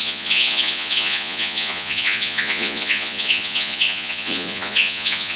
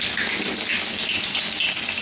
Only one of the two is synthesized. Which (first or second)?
first